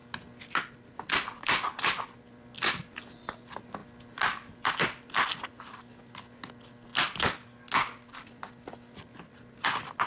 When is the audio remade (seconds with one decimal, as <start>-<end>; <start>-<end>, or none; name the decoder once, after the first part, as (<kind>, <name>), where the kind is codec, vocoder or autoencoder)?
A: none